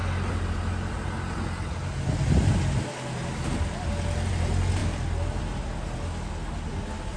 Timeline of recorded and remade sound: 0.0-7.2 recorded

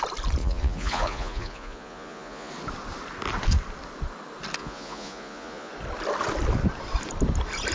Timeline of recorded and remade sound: 0.0-0.4 recorded; 0.4-2.5 remade; 2.5-4.6 recorded; 4.6-5.7 remade; 5.7-7.7 recorded

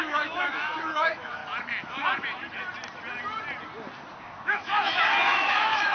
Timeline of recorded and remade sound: 0.0-1.4 remade; 1.4-4.2 recorded; 4.2-5.9 remade

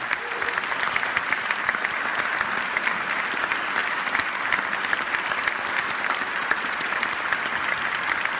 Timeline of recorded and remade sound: 0.0-6.4 recorded; 6.4-7.0 remade; 7.0-8.4 recorded

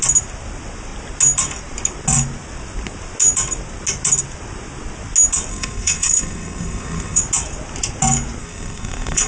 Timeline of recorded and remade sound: 0.0-5.5 recorded; 5.5-7.2 remade; 7.2-8.4 recorded; 8.4-9.3 remade

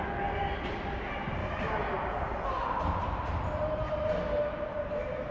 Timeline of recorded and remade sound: 0.0-5.3 recorded

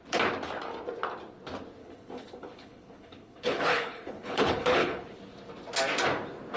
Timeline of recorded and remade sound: 0.0-1.8 recorded; 1.8-5.2 remade; 5.2-6.6 recorded

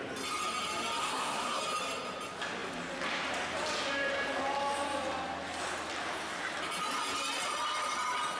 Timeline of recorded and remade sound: 0.0-1.0 recorded; 1.0-1.6 remade; 1.6-8.4 recorded